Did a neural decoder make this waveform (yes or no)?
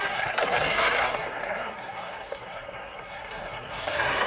yes